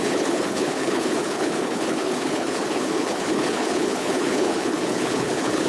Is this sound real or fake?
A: fake